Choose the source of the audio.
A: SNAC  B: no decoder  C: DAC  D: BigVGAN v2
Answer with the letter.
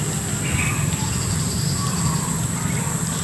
B